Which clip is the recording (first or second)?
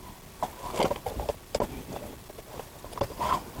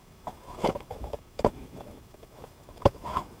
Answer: first